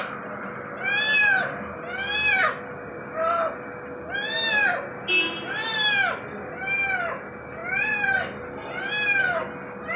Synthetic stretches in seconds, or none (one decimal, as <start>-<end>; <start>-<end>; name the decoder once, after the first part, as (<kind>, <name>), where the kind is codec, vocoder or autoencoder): none